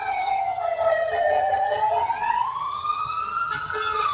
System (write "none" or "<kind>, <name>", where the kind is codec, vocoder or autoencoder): vocoder, HiFi-GAN